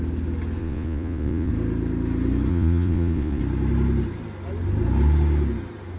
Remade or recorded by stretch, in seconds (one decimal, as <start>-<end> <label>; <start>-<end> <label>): 0.0-0.6 recorded; 0.6-1.5 remade; 1.5-2.5 recorded; 2.5-3.4 remade; 3.4-6.0 recorded